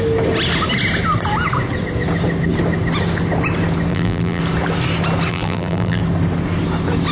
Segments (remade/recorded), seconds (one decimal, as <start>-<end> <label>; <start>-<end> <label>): 0.0-3.9 recorded; 3.9-4.4 remade; 4.4-5.3 recorded; 5.3-6.0 remade; 6.0-7.1 recorded